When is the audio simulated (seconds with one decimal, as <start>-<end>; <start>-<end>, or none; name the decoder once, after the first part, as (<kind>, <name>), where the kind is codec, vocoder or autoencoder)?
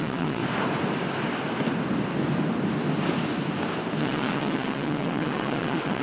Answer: 0.0-0.4 (vocoder, WaveNeXt); 4.0-6.0